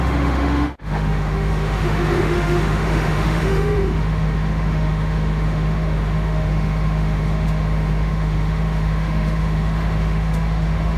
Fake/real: fake